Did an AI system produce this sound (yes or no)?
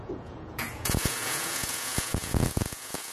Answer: yes